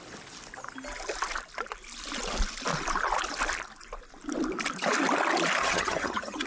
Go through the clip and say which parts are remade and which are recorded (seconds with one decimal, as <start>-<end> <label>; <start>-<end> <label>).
0.0-5.6 recorded; 5.6-6.5 remade